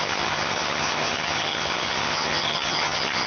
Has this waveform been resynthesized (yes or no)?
yes